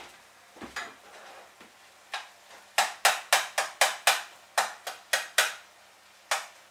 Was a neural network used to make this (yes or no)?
no